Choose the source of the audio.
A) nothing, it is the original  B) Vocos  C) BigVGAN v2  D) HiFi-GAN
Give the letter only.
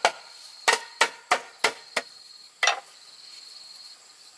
A